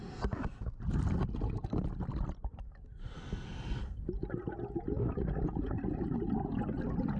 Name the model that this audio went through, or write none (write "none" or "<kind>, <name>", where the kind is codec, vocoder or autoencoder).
none